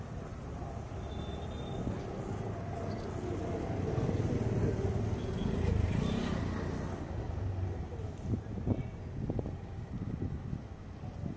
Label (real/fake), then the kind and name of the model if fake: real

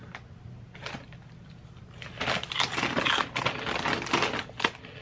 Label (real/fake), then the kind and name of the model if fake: real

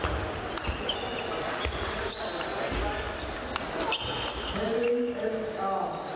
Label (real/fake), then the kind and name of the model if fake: real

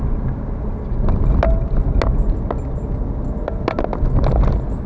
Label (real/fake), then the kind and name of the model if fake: real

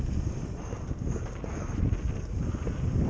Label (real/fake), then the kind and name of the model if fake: real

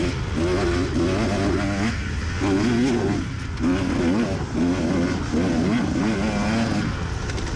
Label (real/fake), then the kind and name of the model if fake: real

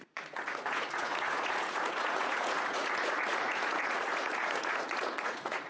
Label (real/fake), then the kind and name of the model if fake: fake, vocoder, Vocos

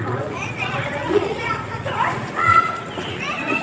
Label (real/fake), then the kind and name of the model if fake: fake, vocoder, Vocos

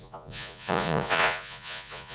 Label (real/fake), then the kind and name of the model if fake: fake, vocoder, Vocos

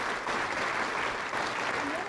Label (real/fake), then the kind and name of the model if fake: real